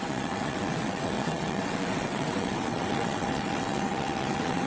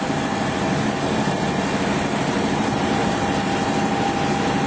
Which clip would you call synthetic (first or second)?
first